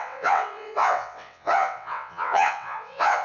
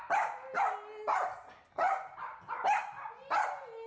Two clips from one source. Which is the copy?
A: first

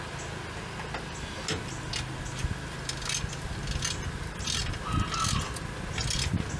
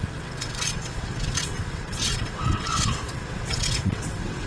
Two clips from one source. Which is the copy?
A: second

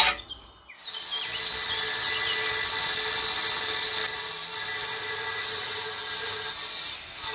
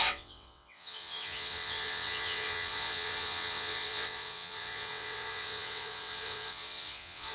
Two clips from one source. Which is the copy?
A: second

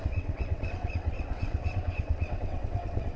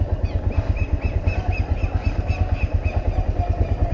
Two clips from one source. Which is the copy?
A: first